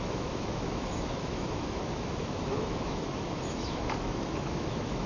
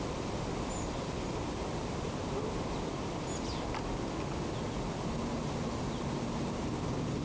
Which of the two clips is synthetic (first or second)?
first